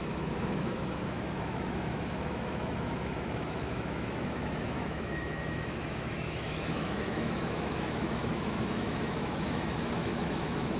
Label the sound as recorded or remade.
remade